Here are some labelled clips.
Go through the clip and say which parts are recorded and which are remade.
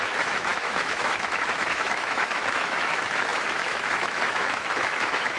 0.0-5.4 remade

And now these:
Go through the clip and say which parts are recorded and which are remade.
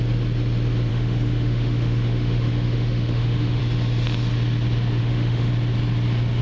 0.0-0.9 recorded; 0.9-3.6 remade; 3.6-5.0 recorded; 5.0-5.5 remade; 5.5-6.4 recorded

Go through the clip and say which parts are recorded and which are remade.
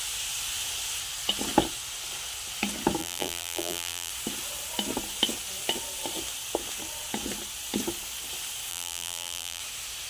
0.0-3.0 recorded; 3.0-4.1 remade; 4.1-8.7 recorded; 8.7-9.6 remade; 9.6-10.1 recorded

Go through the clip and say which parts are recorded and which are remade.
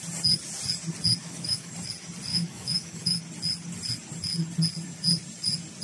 0.0-1.2 recorded; 1.2-1.7 remade; 1.7-2.3 recorded; 2.3-3.2 remade; 3.2-5.8 recorded